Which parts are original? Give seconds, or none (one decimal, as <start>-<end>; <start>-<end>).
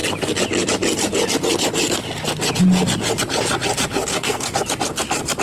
0.0-4.1; 4.6-5.4